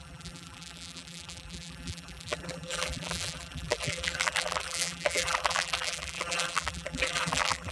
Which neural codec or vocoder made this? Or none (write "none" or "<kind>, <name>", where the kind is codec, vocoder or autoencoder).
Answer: vocoder, BigVGAN v2